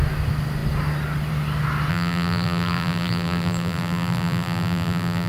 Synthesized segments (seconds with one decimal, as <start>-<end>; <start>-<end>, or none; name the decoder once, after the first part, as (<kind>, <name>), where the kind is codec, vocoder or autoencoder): 1.9-5.3 (vocoder, BigVGAN v2)